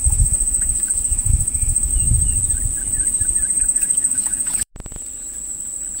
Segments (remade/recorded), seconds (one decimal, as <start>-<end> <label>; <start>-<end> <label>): 0.0-1.9 remade; 1.9-3.6 recorded; 3.6-4.7 remade; 4.7-6.0 recorded